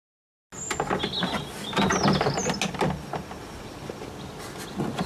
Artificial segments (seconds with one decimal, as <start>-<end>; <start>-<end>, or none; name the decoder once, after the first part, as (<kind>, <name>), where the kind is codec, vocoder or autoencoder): none

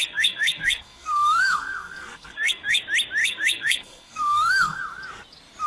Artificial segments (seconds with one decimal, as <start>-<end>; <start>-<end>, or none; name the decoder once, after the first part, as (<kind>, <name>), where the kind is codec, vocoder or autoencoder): 0.0-2.8 (codec, SNAC); 3.2-4.8